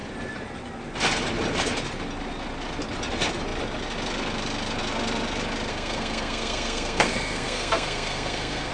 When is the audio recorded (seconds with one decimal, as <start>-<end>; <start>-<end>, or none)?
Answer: 0.0-5.7